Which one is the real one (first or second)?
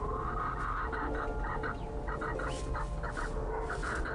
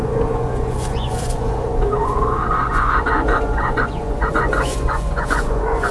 first